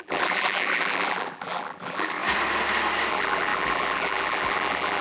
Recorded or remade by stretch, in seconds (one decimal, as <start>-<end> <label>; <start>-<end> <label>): 0.0-2.2 remade; 2.2-3.1 recorded; 3.1-5.0 remade